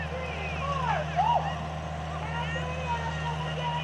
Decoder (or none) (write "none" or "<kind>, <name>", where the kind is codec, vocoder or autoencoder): none